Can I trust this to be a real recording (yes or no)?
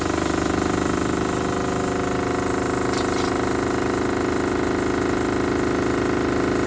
yes